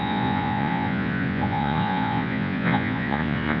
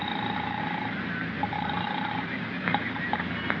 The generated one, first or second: first